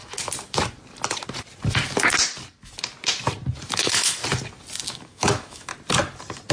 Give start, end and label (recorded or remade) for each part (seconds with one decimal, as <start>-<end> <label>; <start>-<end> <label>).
0.0-3.8 recorded; 3.8-4.2 remade; 4.2-4.9 recorded; 4.9-5.7 remade; 5.7-6.5 recorded

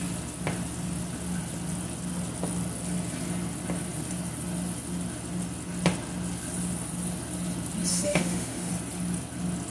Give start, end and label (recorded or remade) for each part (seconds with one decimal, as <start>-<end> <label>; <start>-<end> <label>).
0.0-7.9 recorded; 7.9-8.7 remade; 8.7-9.7 recorded

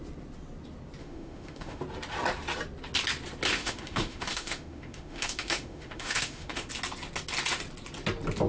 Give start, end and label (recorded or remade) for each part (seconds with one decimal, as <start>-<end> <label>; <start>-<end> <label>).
0.0-1.0 recorded; 1.0-1.8 remade; 1.8-3.5 recorded; 3.5-6.7 remade; 6.7-8.5 recorded